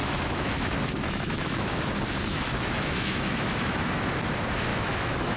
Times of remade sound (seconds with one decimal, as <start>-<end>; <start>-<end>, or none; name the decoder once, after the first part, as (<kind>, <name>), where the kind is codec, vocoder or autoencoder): 0.0-1.8 (autoencoder, DAC-VAE); 2.3-4.0; 4.7-5.4